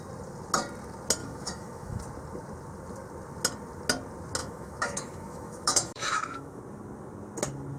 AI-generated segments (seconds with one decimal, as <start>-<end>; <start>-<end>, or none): 1.2-2.0; 4.4-6.6

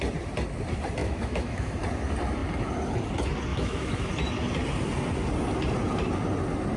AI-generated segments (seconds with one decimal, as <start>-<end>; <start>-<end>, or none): 1.0-1.7; 3.5-4.1

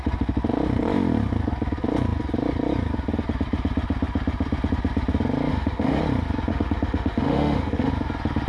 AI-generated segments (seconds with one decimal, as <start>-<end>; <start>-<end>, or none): 5.5-6.0; 6.5-7.9

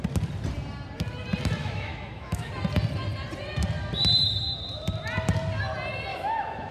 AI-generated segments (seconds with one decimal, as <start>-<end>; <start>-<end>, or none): 1.6-2.5; 6.1-6.7

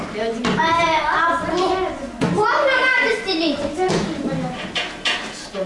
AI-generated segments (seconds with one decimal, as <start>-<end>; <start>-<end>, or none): none

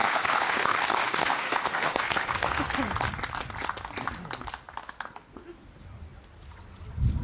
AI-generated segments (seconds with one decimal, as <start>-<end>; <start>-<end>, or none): 0.0-2.8

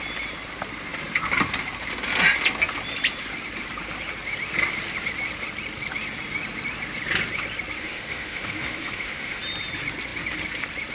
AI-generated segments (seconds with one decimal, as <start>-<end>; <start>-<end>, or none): 7.8-9.4

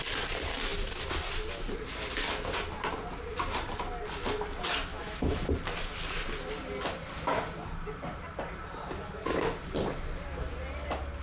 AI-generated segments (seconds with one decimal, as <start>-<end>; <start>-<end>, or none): 4.9-5.5